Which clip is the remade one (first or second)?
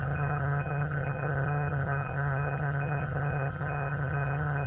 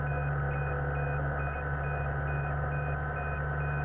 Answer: first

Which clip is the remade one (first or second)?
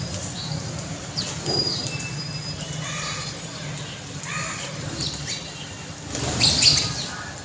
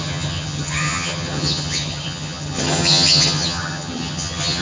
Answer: second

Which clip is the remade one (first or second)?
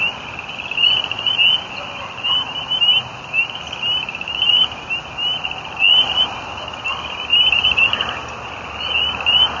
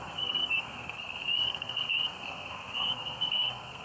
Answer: second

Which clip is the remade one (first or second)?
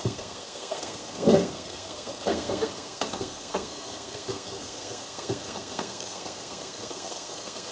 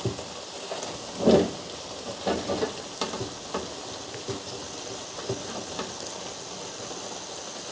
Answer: first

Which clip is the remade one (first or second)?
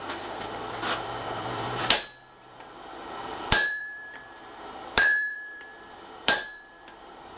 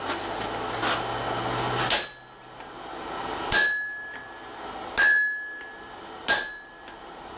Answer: first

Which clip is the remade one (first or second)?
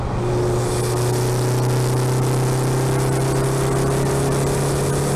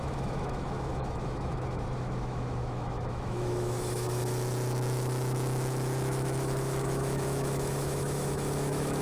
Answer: second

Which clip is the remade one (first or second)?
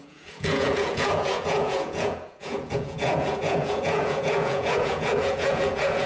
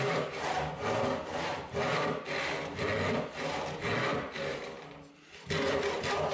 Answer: first